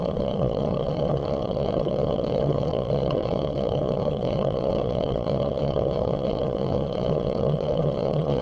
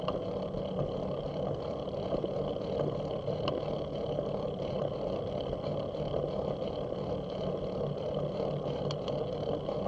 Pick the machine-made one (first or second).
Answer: first